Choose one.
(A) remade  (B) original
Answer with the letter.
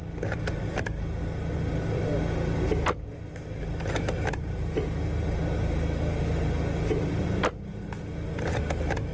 B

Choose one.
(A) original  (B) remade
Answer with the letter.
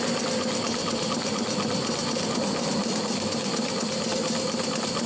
A